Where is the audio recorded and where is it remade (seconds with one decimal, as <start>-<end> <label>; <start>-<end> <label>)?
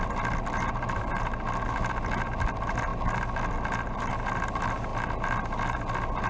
0.0-6.3 recorded